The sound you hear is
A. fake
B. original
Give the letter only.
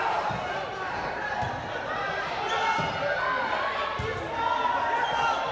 B